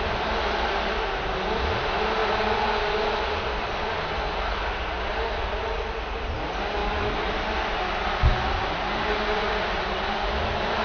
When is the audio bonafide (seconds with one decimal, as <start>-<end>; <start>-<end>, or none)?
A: 0.0-10.8